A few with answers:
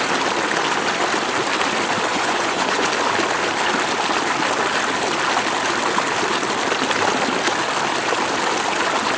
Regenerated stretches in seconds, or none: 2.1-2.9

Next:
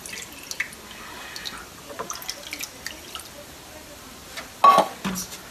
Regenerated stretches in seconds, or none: none

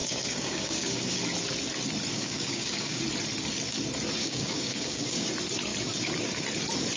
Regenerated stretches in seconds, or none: 0.0-1.2; 2.1-3.0; 4.2-5.3

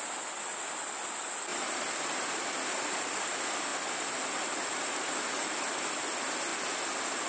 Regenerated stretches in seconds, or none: none

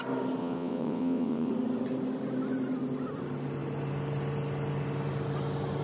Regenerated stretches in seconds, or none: 0.4-1.5

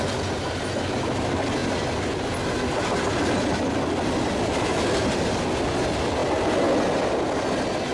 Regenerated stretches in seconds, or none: none

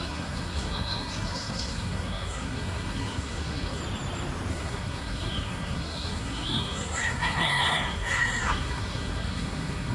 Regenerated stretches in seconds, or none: 0.0-3.8; 4.5-9.9